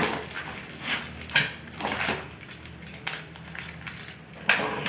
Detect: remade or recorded recorded